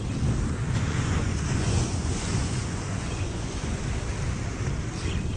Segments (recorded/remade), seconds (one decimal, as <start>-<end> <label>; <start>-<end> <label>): 0.0-0.6 recorded; 0.6-3.8 remade; 3.8-5.4 recorded